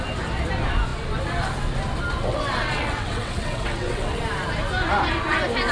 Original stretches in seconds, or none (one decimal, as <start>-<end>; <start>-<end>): 0.0-2.3; 4.2-5.7